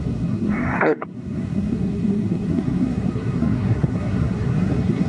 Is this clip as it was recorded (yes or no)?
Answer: no